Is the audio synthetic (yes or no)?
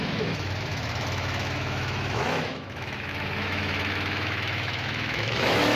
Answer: yes